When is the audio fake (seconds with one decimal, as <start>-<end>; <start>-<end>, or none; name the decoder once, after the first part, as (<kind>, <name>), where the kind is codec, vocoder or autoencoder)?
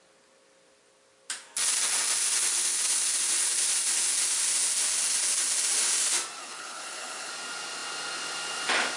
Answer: 6.4-7.3 (codec, HILCodec)